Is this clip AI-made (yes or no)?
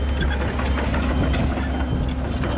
no